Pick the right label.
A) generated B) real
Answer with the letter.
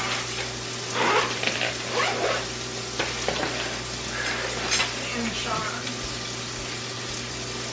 B